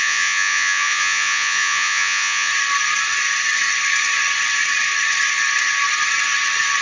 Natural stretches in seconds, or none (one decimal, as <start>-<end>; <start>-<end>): 2.5-6.8